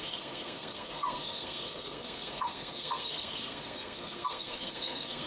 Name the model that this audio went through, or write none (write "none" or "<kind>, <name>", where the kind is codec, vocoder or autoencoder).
codec, SNAC